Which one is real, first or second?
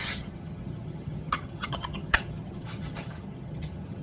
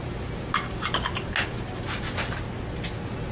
second